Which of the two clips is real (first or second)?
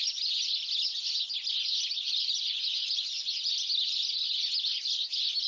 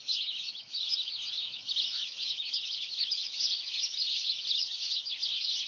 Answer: first